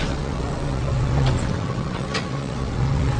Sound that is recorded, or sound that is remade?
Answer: remade